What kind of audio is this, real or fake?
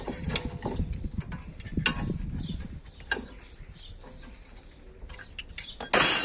real